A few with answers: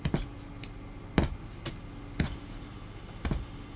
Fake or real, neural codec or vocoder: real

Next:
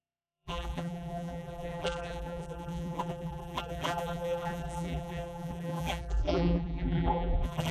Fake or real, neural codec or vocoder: fake, vocoder, BigVGAN v2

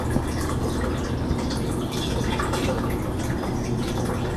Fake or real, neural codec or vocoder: real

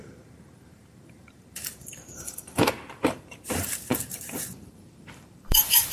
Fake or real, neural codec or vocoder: fake, vocoder, BigVGAN v2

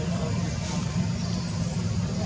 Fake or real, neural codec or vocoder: fake, vocoder, BigVGAN v2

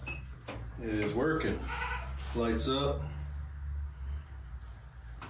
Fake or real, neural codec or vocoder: real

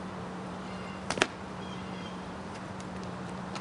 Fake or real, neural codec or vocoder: fake, vocoder, BigVGAN v2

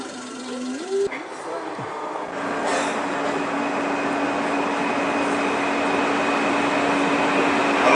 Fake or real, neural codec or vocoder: real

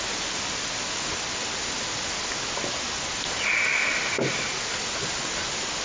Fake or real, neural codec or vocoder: real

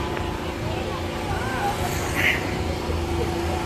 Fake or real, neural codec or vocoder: real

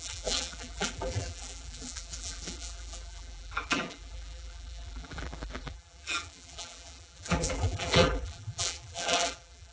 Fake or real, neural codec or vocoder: fake, vocoder, BigVGAN v2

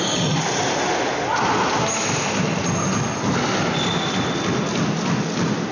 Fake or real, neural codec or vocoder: real